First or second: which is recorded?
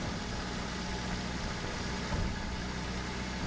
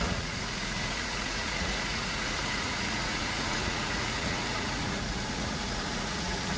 first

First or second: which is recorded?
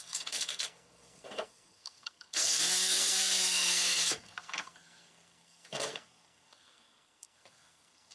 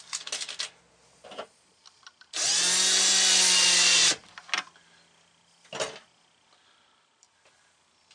second